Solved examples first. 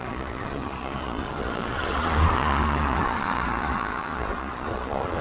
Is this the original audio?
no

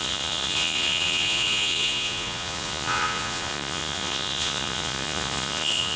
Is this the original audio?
no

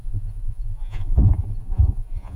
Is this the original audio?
no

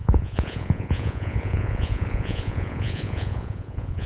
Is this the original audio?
no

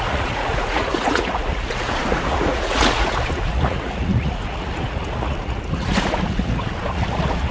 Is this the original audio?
no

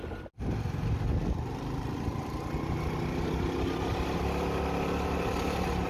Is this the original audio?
yes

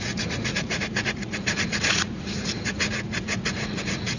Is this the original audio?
no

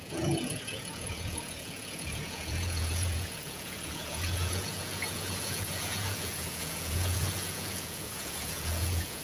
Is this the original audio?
no